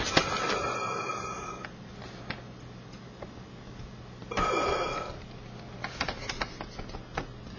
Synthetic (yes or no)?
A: no